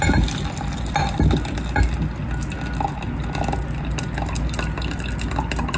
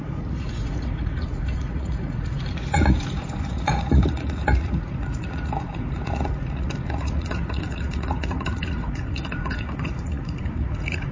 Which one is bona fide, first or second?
first